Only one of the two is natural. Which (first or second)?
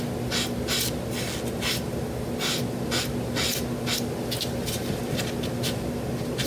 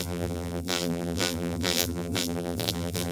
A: first